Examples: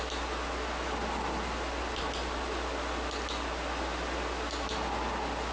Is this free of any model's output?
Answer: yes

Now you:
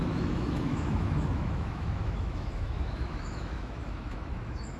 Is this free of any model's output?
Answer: no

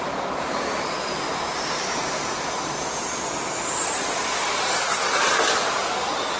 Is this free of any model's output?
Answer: no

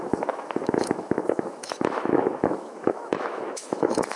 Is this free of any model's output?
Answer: no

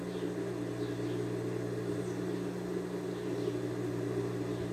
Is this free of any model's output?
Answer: yes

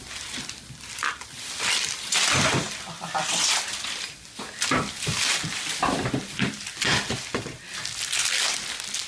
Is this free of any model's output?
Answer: no